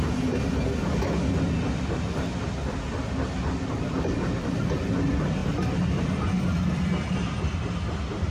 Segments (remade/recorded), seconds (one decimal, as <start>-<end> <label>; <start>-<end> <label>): 0.0-8.3 recorded